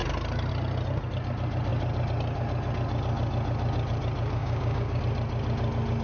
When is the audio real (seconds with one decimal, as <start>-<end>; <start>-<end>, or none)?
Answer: 0.0-4.4; 5.0-6.0